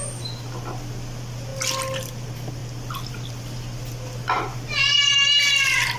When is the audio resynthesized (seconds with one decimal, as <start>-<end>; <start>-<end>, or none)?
none